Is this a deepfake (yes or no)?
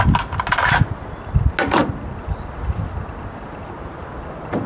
no